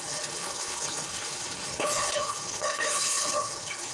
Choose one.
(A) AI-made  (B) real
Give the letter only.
A